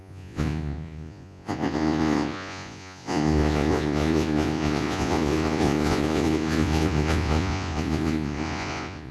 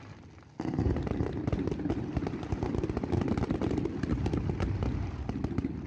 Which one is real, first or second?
second